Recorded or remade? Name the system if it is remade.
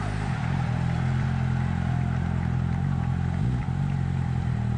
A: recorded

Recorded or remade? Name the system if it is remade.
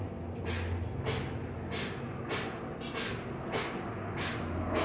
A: recorded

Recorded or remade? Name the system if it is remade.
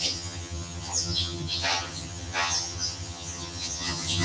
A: remade, vocoder, HiFi-GAN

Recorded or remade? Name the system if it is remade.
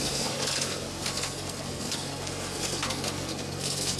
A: remade, codec, SNAC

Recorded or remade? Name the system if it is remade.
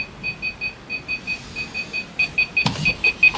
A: recorded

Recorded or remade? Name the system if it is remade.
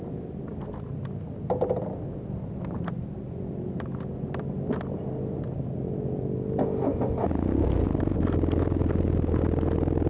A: recorded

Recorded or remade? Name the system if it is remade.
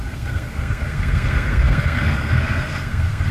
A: remade, codec, SNAC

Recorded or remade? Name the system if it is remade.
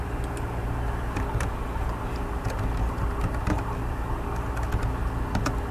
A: recorded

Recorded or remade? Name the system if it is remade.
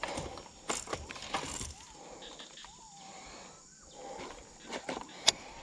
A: recorded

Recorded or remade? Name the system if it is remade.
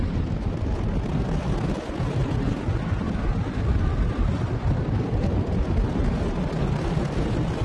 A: recorded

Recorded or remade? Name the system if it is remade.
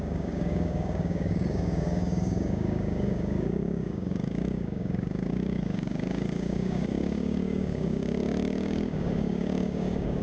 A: remade, codec, DAC